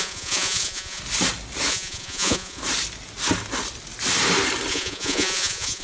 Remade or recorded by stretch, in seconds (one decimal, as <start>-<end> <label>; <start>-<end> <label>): 0.0-1.0 remade; 1.0-1.7 recorded; 1.7-2.6 remade; 2.6-4.7 recorded; 4.7-5.8 remade